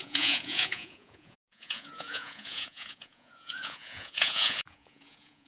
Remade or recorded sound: remade